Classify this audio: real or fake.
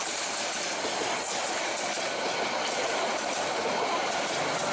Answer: real